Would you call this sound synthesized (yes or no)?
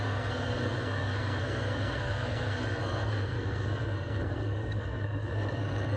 yes